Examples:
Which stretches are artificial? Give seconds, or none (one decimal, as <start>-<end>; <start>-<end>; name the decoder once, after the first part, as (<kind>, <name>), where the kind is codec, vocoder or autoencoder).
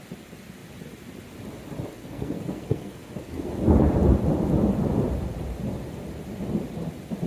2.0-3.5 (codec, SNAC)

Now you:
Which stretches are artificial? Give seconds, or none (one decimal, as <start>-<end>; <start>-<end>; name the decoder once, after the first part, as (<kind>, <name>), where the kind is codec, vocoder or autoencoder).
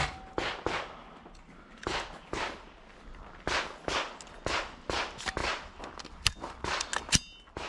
none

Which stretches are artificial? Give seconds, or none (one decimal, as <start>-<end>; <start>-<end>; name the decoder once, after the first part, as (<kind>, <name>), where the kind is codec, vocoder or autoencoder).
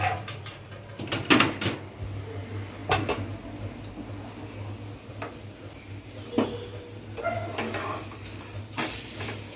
none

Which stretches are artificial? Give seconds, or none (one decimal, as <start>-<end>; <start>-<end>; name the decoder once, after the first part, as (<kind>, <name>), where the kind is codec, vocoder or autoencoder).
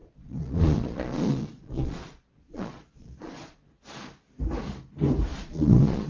0.0-3.7 (vocoder, Vocos); 5.3-6.1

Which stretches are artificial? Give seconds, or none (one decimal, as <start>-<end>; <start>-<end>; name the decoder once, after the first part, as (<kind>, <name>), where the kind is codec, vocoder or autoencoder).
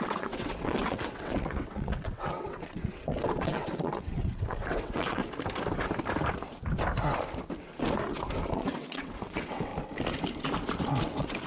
0.0-5.2 (vocoder, WaveNeXt); 8.5-9.7; 11.0-11.5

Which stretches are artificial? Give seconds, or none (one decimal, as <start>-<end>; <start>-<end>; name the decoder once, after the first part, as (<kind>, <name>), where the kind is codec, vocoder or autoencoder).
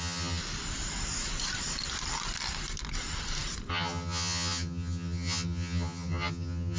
0.0-0.4 (vocoder, HiFi-GAN); 3.7-6.8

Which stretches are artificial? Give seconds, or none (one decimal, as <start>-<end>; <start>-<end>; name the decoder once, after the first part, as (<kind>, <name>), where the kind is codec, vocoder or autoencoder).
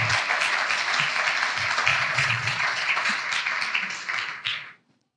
1.9-3.2 (vocoder, Vocos); 4.5-5.2